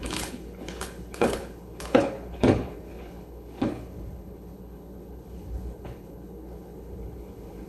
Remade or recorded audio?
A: remade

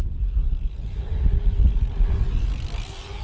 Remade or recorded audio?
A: recorded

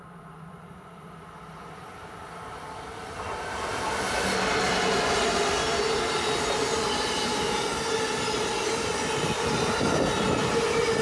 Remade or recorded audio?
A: recorded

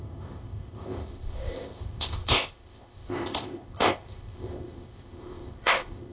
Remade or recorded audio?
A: remade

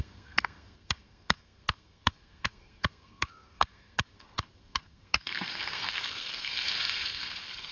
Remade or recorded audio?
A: remade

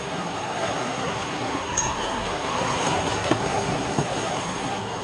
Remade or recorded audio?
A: remade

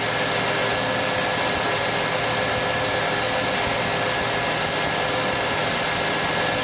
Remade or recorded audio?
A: recorded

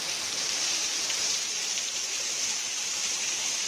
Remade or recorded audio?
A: remade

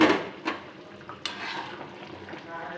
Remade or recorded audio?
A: recorded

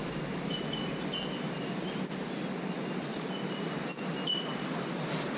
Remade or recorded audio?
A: recorded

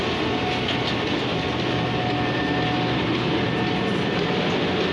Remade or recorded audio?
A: recorded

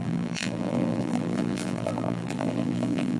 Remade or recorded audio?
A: remade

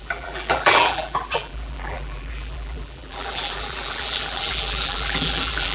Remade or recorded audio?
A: remade